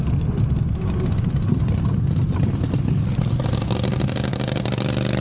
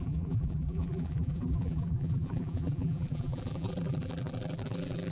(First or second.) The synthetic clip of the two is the second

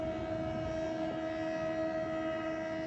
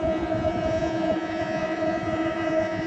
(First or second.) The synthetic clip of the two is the second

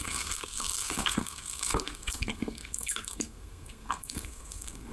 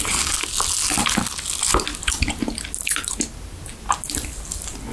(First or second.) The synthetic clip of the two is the first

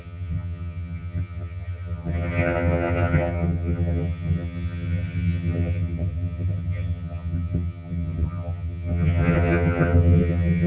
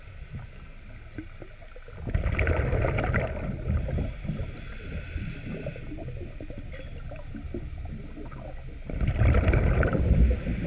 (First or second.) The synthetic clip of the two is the first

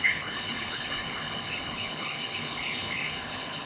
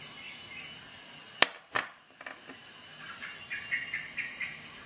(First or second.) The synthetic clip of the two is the first